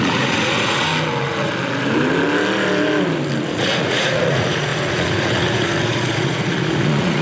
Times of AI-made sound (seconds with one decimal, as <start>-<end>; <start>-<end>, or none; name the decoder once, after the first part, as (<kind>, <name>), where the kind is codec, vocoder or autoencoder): 0.0-0.9 (vocoder, Vocos); 3.5-7.2